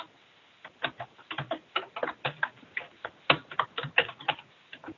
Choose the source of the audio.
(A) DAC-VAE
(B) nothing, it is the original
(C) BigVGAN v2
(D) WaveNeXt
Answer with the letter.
B